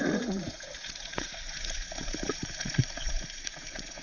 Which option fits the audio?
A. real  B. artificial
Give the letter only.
B